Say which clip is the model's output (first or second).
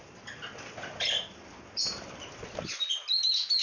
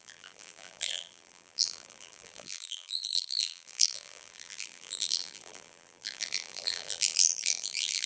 second